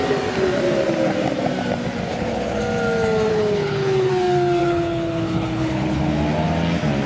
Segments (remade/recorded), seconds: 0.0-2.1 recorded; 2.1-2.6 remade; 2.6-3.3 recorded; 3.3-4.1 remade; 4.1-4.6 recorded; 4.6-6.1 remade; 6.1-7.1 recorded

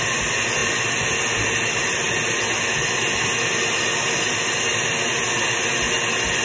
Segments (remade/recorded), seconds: 0.0-6.4 recorded